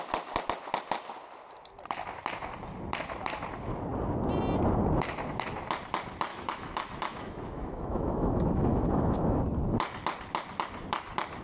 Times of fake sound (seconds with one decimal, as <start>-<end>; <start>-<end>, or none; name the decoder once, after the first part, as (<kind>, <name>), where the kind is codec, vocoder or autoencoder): 6.3-9.4 (autoencoder, DAC-VAE)